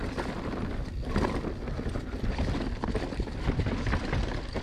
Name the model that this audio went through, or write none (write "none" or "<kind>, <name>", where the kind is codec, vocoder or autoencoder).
none